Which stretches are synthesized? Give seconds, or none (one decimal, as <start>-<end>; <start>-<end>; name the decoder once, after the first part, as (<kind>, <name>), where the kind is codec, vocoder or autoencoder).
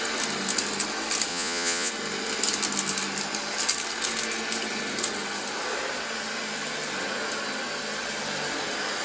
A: 1.3-1.9 (vocoder, Vocos)